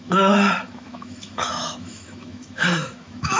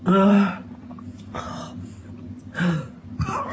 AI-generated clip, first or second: first